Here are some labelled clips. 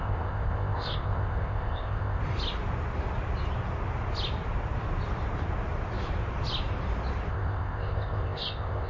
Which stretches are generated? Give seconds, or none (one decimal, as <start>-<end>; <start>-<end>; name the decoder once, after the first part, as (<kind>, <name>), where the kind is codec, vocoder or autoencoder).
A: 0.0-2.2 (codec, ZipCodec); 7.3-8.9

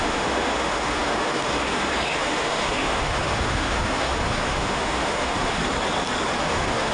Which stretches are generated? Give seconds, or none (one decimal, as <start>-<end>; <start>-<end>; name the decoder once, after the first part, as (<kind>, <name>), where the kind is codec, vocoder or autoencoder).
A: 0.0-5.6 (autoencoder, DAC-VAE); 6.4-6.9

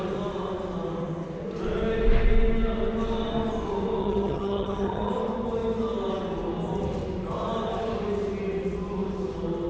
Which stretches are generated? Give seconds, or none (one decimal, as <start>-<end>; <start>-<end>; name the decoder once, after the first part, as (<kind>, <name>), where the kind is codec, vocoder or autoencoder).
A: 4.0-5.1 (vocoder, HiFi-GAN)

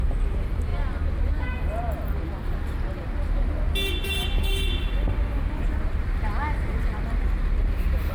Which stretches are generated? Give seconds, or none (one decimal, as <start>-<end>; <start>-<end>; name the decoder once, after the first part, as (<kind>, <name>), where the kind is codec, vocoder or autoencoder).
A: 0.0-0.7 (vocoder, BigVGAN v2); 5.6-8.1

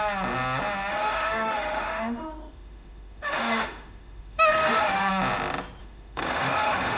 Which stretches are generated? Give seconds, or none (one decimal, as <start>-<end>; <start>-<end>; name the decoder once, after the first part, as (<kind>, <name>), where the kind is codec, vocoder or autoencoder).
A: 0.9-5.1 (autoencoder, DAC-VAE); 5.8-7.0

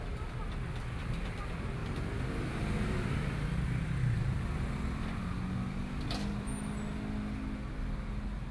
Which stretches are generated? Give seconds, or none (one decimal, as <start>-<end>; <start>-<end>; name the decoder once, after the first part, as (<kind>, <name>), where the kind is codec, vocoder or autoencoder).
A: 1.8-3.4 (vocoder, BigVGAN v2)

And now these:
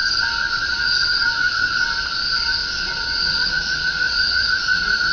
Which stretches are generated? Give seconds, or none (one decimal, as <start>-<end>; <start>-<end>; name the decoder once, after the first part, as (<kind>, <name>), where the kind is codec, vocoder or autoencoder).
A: 2.6-4.5 (vocoder, Vocos)